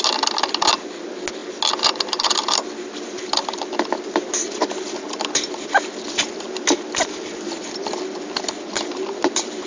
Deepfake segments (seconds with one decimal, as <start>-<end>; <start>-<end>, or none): none